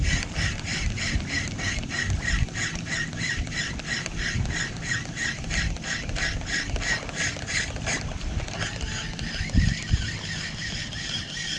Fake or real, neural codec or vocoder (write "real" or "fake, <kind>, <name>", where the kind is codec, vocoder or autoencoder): real